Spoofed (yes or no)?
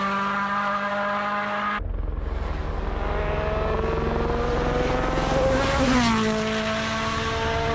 no